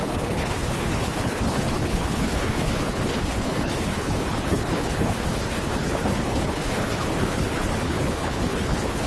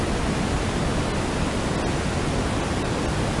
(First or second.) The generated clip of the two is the first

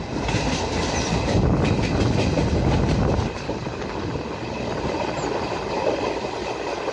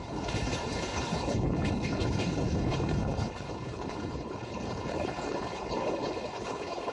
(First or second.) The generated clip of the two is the second